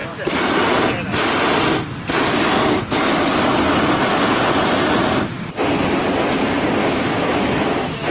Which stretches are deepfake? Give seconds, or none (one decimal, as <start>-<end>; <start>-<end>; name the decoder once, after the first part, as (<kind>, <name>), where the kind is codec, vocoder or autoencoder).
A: 6.8-7.4 (autoencoder, DAC-VAE)